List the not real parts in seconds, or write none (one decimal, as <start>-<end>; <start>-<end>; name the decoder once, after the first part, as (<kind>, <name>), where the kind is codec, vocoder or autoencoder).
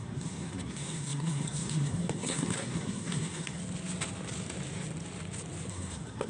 0.0-3.6 (codec, SNAC); 5.7-6.3